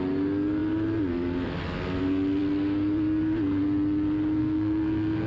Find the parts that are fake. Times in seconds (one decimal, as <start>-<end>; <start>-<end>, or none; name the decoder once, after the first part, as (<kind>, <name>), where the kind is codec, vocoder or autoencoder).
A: 4.4-5.3 (codec, SNAC)